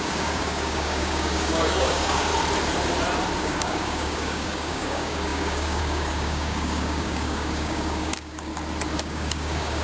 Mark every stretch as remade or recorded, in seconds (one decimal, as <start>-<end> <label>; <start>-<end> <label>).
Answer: 0.0-2.3 remade; 2.3-3.4 recorded; 3.4-8.5 remade; 8.5-9.0 recorded; 9.0-9.8 remade